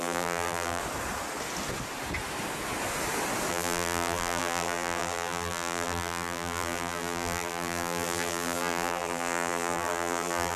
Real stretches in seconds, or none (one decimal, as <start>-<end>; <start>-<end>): 0.8-3.5